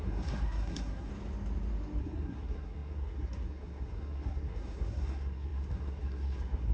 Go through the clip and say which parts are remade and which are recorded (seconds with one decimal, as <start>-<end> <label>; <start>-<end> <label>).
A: 0.0-1.1 remade; 1.1-2.0 recorded; 2.0-6.7 remade